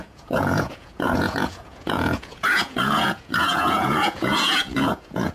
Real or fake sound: fake